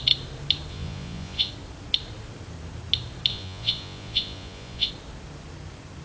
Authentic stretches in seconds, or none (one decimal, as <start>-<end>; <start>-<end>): 0.0-0.7; 1.5-3.3; 4.9-6.0